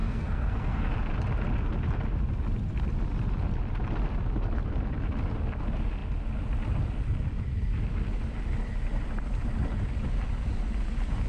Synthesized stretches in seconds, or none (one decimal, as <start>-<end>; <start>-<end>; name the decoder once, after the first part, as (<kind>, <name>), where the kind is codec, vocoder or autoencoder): 0.0-0.9 (codec, SNAC)